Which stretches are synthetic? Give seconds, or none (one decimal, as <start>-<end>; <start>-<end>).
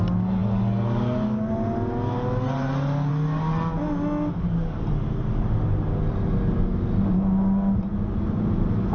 none